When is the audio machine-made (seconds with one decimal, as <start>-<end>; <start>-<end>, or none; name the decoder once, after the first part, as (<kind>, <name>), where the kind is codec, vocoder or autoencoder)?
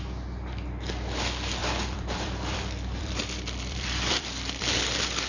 1.6-4.6 (vocoder, BigVGAN v2)